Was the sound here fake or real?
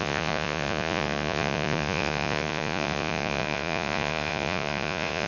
fake